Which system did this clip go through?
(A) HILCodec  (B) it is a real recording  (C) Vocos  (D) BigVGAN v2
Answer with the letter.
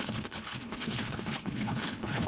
A